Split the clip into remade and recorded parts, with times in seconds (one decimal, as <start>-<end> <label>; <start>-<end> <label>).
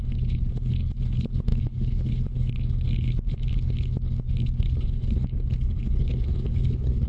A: 0.0-7.1 remade